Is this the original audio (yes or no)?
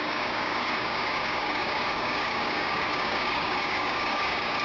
no